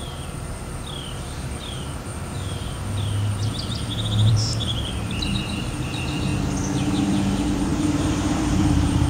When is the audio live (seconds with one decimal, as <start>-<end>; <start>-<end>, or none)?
2.1-4.3; 6.3-7.0